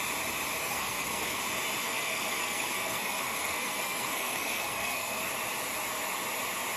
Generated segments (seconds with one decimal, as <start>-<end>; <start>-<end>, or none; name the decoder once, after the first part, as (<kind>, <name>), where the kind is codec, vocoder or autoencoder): 0.6-1.4 (codec, SNAC); 1.8-5.3